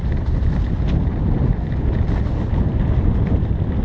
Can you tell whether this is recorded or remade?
recorded